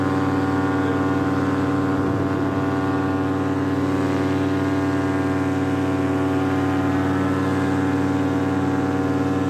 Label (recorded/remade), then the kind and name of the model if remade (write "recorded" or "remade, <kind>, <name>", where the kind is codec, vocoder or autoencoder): recorded